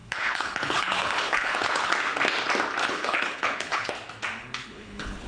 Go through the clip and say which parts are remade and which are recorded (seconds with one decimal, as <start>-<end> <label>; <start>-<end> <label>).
0.0-1.9 remade; 1.9-2.8 recorded; 2.8-3.9 remade; 3.9-4.4 recorded; 4.4-5.3 remade